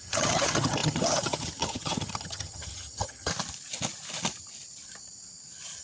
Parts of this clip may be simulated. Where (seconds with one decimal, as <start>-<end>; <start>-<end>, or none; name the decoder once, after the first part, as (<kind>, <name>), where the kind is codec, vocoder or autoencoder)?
0.0-3.3 (vocoder, HiFi-GAN)